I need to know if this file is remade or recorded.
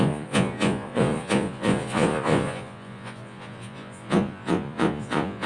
remade